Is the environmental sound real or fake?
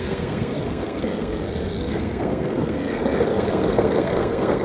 fake